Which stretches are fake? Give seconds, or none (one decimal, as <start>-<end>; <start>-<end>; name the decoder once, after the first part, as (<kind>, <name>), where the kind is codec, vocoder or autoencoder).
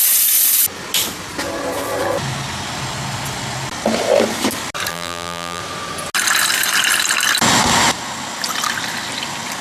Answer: 4.9-5.6 (vocoder, BigVGAN v2)